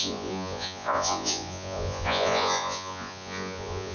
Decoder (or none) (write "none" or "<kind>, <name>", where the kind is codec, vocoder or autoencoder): vocoder, Vocos